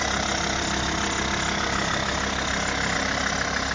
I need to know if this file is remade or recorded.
recorded